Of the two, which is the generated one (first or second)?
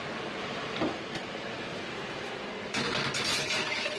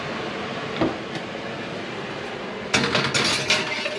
first